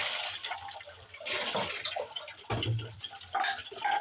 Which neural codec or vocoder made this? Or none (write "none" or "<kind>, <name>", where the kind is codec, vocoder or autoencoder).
none